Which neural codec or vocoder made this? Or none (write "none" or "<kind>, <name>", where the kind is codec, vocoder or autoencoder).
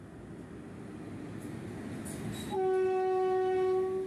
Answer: none